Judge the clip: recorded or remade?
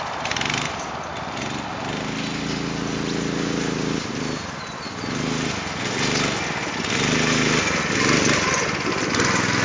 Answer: recorded